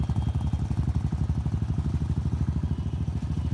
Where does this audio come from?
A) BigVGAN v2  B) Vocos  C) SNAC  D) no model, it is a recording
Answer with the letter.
D